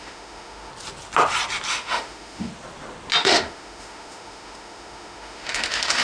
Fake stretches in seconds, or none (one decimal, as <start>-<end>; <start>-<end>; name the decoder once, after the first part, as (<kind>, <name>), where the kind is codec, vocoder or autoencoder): 0.0-0.7 (autoencoder, DAC-VAE); 1.7-2.5; 3.2-6.0